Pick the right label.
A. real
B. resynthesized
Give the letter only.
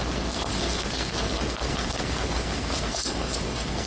B